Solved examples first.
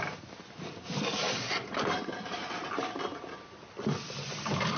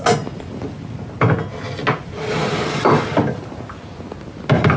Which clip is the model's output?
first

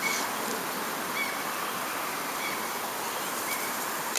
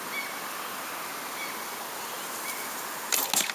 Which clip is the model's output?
first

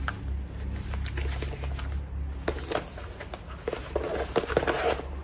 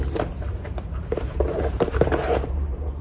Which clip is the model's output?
second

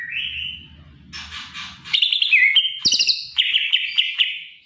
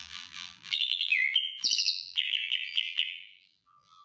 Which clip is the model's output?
second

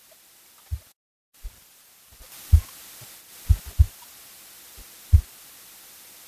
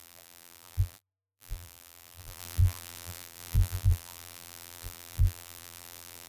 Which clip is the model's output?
second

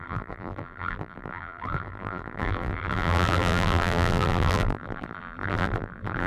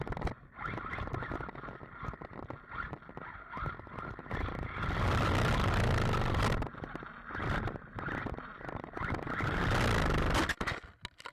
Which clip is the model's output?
first